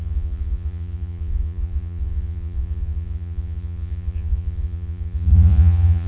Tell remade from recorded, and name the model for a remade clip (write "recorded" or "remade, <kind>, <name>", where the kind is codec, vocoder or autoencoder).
remade, vocoder, Vocos